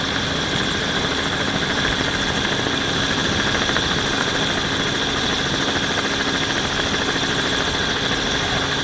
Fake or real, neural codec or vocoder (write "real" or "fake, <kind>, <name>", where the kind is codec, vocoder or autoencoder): real